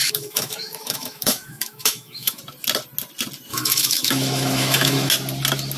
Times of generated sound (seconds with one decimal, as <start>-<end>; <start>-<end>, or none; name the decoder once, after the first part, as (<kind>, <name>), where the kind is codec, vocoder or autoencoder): 0.0-2.4 (autoencoder, DAC-VAE); 3.5-5.1